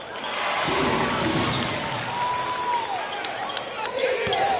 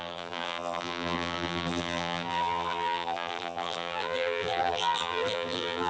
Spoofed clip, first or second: second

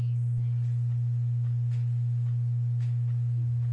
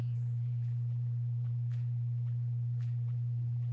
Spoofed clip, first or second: second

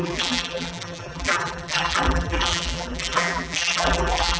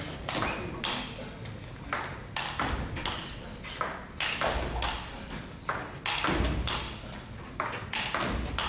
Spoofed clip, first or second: first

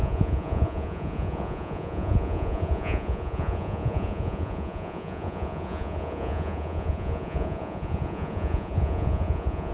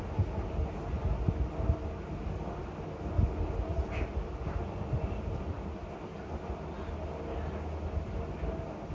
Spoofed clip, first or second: first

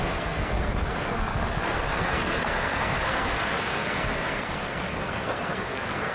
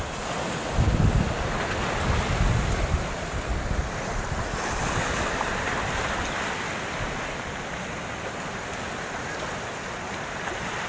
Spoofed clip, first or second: first